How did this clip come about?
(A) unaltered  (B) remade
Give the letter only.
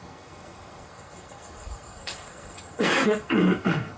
B